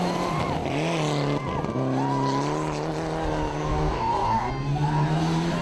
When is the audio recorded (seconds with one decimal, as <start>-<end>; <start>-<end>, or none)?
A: 0.0-3.6; 4.5-5.6